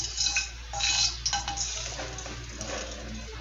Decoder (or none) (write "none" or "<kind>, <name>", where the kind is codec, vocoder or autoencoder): none